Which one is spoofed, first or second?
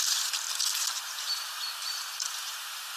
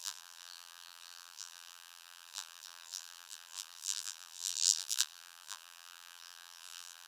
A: second